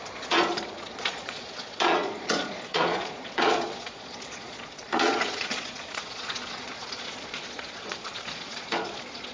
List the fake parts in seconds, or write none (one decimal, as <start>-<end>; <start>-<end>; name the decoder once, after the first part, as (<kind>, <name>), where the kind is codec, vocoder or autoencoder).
0.0-9.3 (vocoder, Vocos)

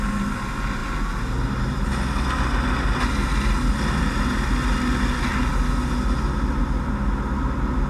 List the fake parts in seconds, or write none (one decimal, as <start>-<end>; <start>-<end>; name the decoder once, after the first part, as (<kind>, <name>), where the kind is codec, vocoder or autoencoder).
none